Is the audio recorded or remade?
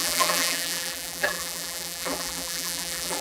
remade